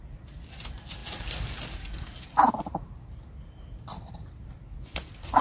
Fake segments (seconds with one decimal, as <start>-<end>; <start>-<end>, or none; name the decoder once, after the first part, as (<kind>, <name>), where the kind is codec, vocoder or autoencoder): none

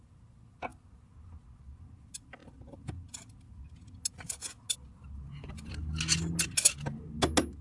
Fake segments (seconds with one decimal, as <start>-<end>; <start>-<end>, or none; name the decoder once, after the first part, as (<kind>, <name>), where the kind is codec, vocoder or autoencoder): none

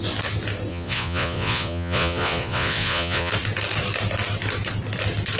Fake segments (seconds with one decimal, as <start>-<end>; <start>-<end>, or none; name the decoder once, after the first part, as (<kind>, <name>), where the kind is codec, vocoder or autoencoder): 0.7-3.3 (vocoder, Vocos)

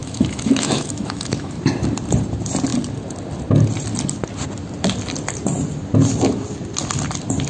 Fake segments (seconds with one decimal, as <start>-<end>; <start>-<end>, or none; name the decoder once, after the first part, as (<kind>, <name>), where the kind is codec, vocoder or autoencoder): 0.0-1.6 (autoencoder, DAC-VAE)

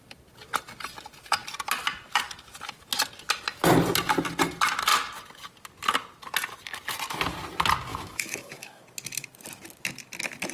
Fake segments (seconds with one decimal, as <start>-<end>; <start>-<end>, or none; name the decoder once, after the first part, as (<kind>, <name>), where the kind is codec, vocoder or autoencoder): 7.9-8.8 (autoencoder, DAC-VAE)

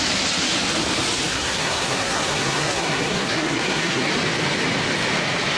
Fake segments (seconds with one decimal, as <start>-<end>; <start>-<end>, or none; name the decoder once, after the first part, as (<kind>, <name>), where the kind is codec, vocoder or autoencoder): 1.3-4.1 (codec, SNAC)

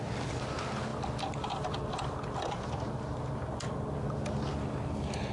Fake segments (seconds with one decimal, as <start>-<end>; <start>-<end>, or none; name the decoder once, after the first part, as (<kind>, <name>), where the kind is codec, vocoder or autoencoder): none

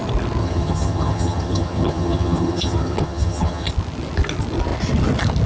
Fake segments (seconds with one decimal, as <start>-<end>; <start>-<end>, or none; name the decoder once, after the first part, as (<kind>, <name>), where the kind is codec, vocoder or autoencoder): 0.4-3.7 (vocoder, HiFi-GAN)